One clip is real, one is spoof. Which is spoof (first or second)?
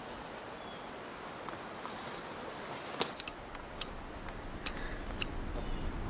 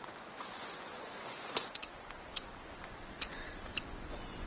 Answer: second